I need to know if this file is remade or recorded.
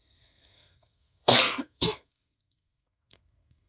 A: remade